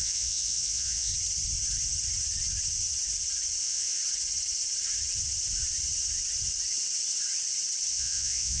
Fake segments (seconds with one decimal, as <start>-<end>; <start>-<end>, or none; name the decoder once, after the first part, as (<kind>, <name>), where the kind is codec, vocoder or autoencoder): 0.0-1.1 (vocoder, Vocos); 3.6-4.0; 7.9-8.6